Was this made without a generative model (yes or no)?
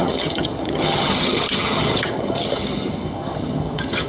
no